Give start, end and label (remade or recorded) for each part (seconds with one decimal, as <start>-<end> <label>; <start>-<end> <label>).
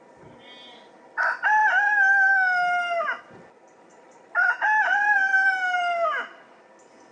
0.0-3.9 recorded; 3.9-5.8 remade; 5.8-7.1 recorded